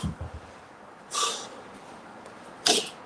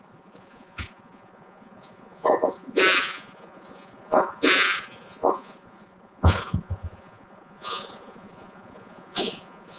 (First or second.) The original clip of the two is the first